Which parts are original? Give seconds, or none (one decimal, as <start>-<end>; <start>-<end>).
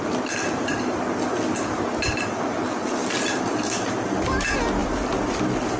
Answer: 0.0-5.8